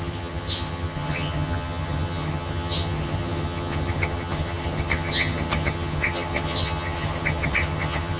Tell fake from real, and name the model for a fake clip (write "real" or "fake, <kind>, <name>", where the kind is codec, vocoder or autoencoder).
fake, vocoder, HiFi-GAN